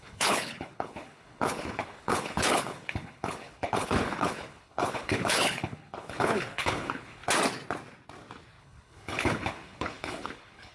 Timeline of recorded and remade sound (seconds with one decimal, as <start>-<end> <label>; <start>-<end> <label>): 0.0-7.2 remade; 7.2-8.6 recorded; 8.6-10.7 remade